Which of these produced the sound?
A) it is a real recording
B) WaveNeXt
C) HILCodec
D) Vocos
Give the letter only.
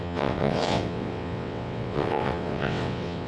B